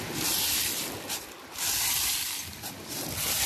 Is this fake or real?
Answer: fake